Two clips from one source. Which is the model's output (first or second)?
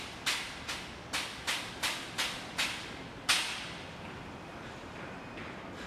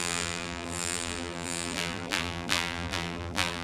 second